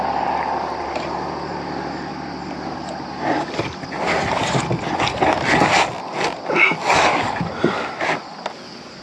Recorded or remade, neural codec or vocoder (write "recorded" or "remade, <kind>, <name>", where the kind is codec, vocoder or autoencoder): recorded